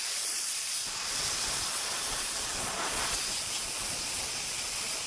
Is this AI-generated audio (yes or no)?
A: yes